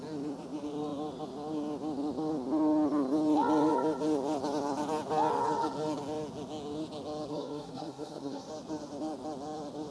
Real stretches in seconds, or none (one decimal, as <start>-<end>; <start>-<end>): 0.0-7.3; 8.5-9.9